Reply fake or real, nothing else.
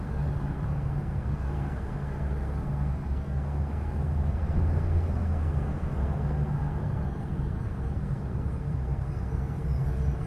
fake